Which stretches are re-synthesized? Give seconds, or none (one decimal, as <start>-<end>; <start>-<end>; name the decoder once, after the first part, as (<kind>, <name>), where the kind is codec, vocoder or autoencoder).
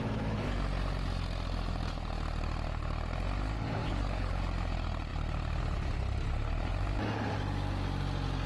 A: 3.8-4.4 (codec, HILCodec)